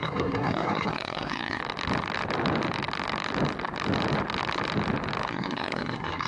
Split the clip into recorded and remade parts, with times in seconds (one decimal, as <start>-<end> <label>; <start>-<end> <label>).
0.0-1.6 remade; 1.6-5.3 recorded; 5.3-6.3 remade